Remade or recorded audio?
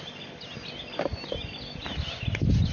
recorded